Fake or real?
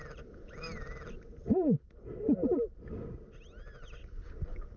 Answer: real